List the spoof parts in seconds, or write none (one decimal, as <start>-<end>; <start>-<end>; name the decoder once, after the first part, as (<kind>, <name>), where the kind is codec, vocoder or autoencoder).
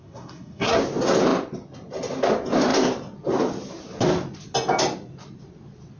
0.0-0.8 (codec, SNAC)